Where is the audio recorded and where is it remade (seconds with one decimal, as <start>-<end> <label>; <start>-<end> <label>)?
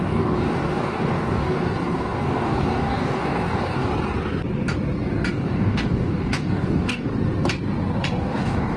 0.0-3.9 remade; 3.9-5.3 recorded; 5.3-7.1 remade; 7.1-8.2 recorded; 8.2-8.8 remade